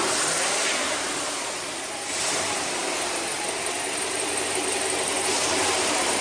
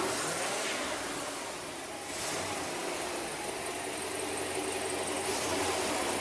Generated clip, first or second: first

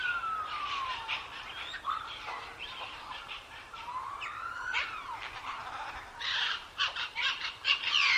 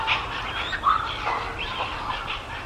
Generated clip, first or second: first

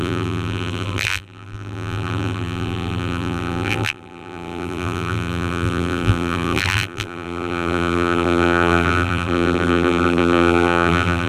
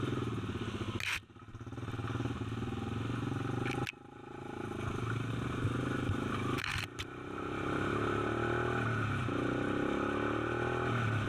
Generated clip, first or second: first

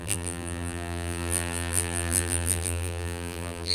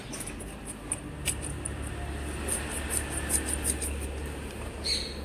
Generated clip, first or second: first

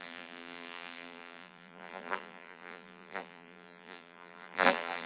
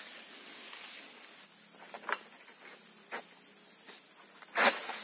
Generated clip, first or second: first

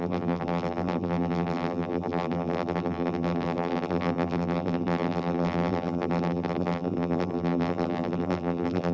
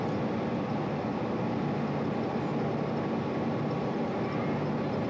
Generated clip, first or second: first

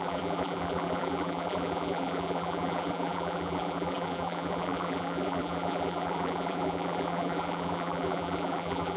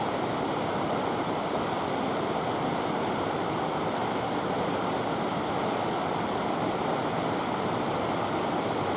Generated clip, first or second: first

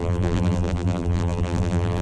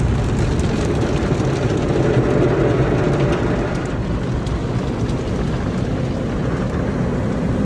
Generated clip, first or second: first